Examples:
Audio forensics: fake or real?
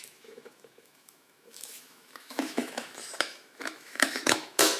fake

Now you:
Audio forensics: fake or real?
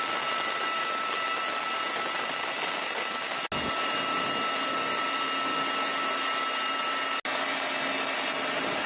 real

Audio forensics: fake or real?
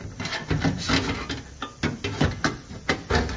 real